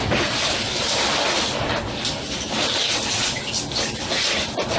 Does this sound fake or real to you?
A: real